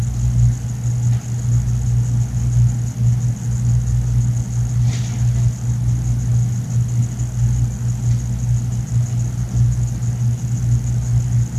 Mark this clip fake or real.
real